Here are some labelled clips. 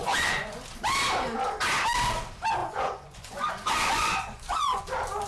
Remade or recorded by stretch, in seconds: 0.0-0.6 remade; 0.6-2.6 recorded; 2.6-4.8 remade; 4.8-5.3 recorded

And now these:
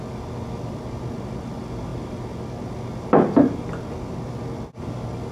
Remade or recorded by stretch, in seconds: 0.0-1.9 recorded; 1.9-2.6 remade; 2.6-5.3 recorded

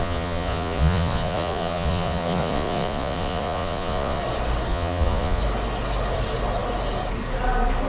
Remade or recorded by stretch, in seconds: 0.0-4.2 remade; 4.2-4.7 recorded; 4.7-5.4 remade; 5.4-7.9 recorded

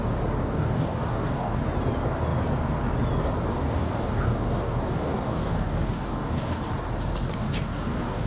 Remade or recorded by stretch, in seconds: 0.0-0.4 recorded; 0.4-1.6 remade; 1.6-3.5 recorded; 3.5-6.6 remade; 6.6-7.4 recorded; 7.4-8.3 remade

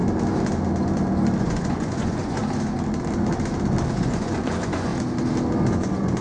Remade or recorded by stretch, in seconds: 0.0-1.4 recorded; 1.4-2.4 remade; 2.4-3.9 recorded; 3.9-4.9 remade; 4.9-5.7 recorded; 5.7-6.2 remade